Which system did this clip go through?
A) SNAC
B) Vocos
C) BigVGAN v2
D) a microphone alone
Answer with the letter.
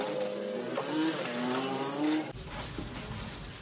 D